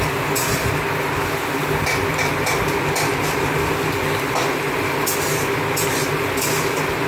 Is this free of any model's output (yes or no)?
yes